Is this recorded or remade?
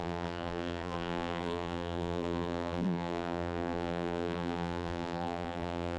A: remade